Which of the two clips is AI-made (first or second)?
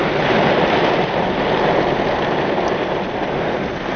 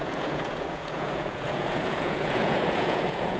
second